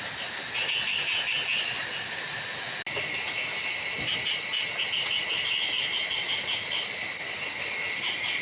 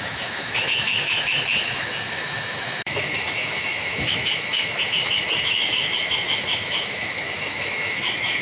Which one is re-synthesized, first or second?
second